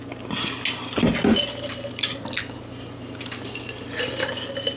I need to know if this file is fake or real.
real